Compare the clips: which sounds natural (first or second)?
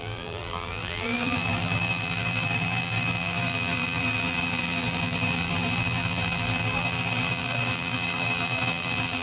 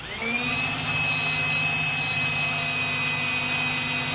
second